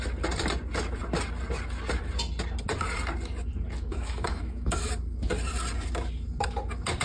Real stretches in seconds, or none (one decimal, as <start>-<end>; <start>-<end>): 0.0-3.9; 4.9-7.0